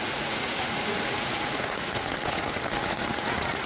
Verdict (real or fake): fake